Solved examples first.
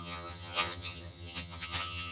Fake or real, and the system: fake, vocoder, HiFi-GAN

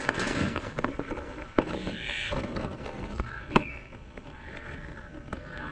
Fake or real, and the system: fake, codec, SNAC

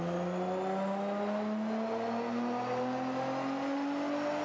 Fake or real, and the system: real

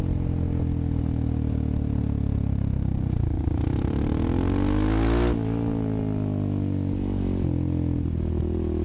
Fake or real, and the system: real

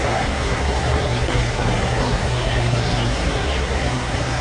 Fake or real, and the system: fake, codec, SNAC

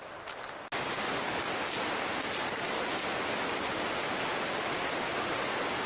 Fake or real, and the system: real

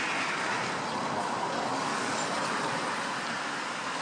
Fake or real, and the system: real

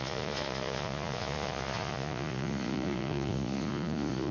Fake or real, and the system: fake, vocoder, Vocos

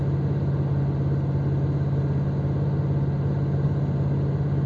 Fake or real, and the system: real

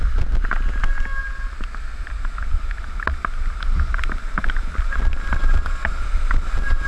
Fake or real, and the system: real